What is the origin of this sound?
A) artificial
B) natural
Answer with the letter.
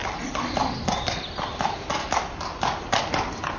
B